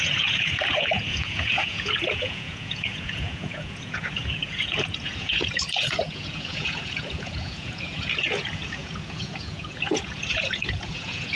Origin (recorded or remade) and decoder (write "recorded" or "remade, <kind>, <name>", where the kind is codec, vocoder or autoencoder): remade, vocoder, Vocos